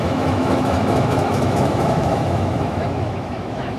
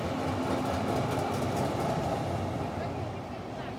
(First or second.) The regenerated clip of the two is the first